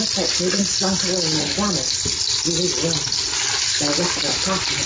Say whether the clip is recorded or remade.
recorded